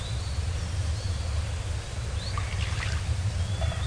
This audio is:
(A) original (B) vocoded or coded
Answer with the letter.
A